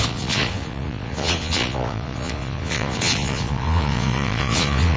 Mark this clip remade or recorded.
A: remade